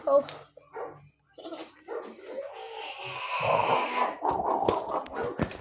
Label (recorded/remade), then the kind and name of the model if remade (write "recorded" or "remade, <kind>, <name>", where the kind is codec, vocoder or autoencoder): recorded